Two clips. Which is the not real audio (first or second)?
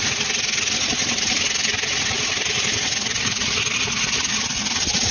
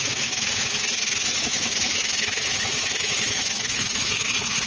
second